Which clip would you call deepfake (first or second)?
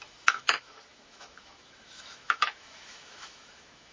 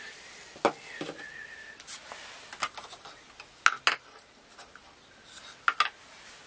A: first